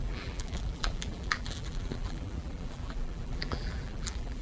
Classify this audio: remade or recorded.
remade